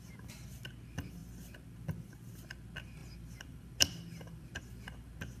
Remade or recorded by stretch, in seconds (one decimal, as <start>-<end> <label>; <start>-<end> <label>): 0.0-3.0 recorded; 3.0-4.6 remade; 4.6-5.4 recorded

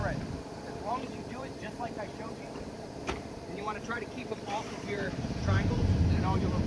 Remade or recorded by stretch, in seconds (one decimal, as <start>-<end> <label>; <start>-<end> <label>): 0.0-0.9 recorded; 0.9-6.7 remade